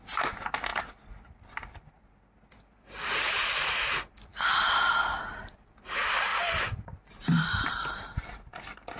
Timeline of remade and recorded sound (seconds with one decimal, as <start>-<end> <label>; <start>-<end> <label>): 0.0-0.7 recorded; 0.7-3.9 remade; 3.9-4.3 recorded; 4.3-5.0 remade; 5.0-6.3 recorded; 6.3-7.1 remade; 7.1-9.0 recorded